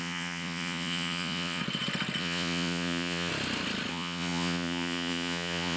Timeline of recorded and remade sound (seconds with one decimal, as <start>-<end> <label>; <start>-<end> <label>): 0.0-1.6 remade; 1.6-2.2 recorded; 2.2-3.3 remade; 3.3-3.9 recorded; 3.9-5.8 remade